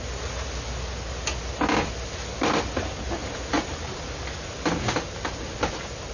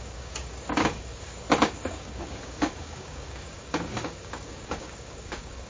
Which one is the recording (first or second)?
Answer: first